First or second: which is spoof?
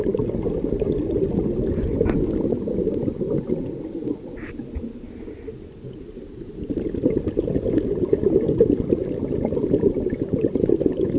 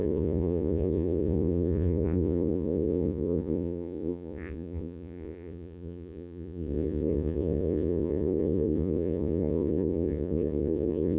second